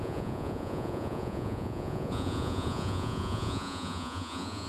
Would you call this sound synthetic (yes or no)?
yes